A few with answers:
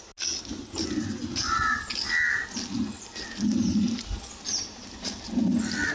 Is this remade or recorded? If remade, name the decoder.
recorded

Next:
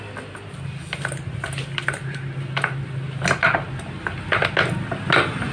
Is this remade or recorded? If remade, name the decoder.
recorded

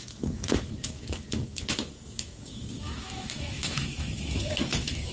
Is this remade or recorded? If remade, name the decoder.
remade, autoencoder, DAC-VAE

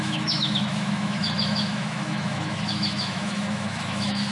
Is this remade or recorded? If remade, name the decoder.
remade, autoencoder, DAC-VAE